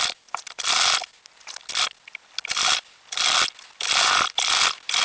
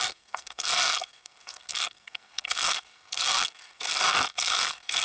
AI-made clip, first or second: second